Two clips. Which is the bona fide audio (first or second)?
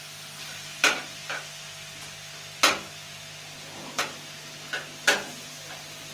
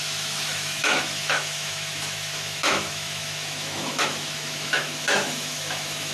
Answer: first